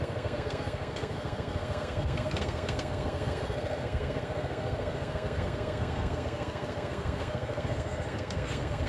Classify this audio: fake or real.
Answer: fake